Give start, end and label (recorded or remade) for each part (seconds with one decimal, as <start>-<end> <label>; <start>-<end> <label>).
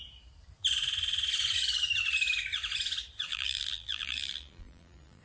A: 0.0-3.3 recorded; 3.3-5.2 remade